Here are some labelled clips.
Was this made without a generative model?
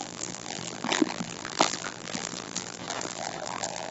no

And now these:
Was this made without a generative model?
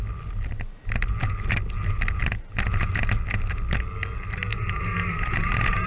yes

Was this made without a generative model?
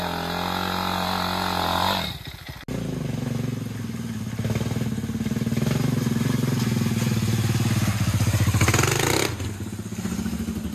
yes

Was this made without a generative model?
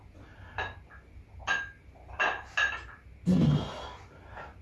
yes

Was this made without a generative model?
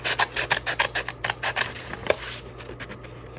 yes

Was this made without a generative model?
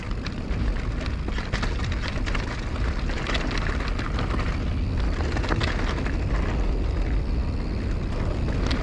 yes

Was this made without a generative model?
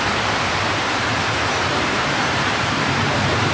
no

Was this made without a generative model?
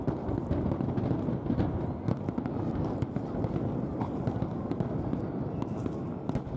yes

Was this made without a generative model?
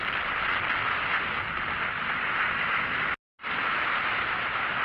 yes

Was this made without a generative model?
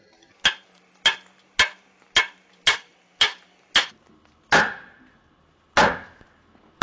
yes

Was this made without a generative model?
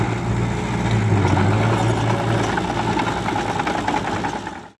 yes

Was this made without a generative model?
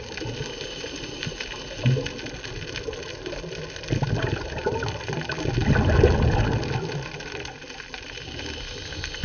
yes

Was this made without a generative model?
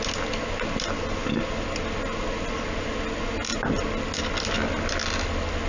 yes